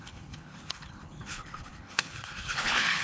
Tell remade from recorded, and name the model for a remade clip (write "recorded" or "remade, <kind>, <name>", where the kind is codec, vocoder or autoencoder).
remade, codec, HILCodec